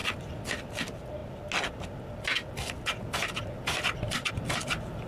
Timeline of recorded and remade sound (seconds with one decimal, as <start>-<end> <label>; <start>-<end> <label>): 0.0-5.1 recorded